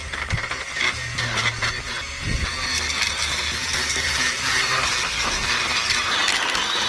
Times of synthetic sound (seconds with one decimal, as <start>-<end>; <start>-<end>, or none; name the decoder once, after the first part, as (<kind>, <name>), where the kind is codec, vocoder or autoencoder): 3.6-4.9 (vocoder, BigVGAN v2)